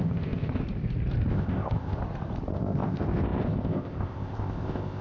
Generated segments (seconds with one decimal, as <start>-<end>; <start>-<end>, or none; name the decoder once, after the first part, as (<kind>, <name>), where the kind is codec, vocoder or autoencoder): 0.0-0.6 (codec, ZipCodec); 1.3-2.0; 2.5-5.0